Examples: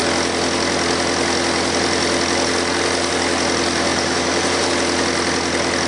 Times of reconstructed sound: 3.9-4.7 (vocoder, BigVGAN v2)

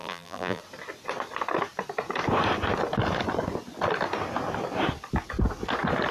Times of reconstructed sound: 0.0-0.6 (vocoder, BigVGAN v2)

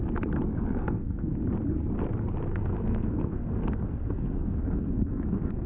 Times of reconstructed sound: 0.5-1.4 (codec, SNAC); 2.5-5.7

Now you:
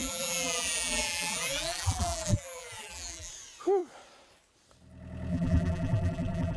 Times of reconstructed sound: 0.0-3.3 (vocoder, BigVGAN v2); 5.3-6.6